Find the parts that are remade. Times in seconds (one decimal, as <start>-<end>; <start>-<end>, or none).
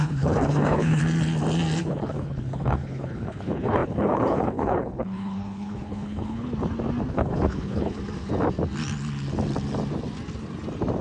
0.0-1.0; 1.8-6.5; 7.1-8.0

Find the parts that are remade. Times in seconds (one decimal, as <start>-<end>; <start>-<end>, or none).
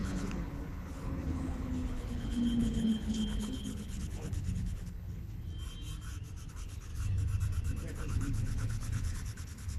0.0-5.5; 6.5-6.9; 7.9-9.8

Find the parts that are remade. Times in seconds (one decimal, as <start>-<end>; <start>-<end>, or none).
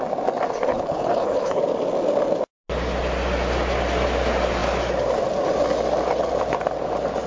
0.7-1.6